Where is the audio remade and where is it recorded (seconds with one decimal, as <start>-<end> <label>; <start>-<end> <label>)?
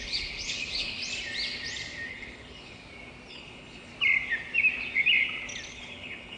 0.0-1.0 remade; 1.0-2.1 recorded; 2.1-2.8 remade; 2.8-3.3 recorded; 3.3-3.9 remade; 3.9-5.7 recorded; 5.7-6.4 remade